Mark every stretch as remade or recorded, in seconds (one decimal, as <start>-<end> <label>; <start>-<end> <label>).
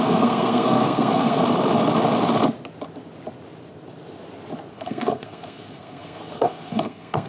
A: 0.0-1.4 remade; 1.4-4.7 recorded; 4.7-7.3 remade